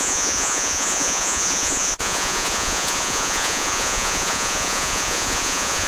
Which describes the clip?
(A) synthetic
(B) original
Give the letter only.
A